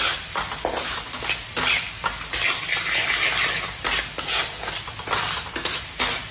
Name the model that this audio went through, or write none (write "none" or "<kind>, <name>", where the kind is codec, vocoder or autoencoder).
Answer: none